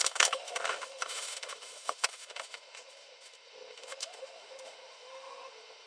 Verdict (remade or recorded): remade